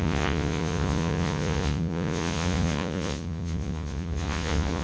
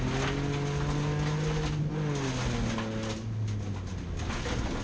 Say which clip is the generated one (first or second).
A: first